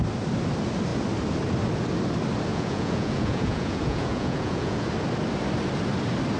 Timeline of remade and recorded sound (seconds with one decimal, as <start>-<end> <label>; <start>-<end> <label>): 0.0-2.5 recorded; 2.5-4.9 remade; 4.9-6.4 recorded